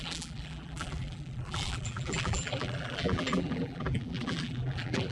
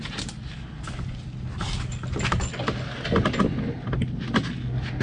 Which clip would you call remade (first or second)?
first